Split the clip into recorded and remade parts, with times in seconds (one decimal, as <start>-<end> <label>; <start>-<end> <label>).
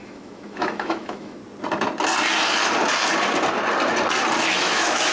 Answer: 0.0-1.4 remade; 1.4-4.5 recorded; 4.5-5.1 remade